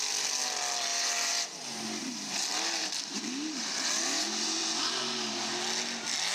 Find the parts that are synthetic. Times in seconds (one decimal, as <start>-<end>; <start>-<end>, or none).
0.9-4.7